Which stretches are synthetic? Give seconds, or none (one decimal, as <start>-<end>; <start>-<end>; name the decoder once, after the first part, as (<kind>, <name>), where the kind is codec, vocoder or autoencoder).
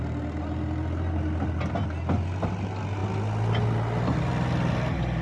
none